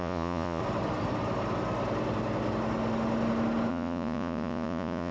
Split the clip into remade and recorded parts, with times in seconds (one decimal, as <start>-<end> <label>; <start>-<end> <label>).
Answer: 0.0-0.6 remade; 0.6-3.7 recorded; 3.7-5.1 remade